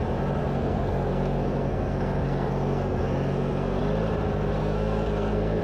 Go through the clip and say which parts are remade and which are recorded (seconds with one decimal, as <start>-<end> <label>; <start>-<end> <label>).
0.0-0.4 recorded; 0.4-3.8 remade; 3.8-4.6 recorded; 4.6-5.6 remade